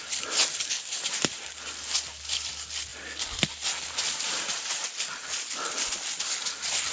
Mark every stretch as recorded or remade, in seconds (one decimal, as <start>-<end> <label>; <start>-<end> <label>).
0.0-6.9 recorded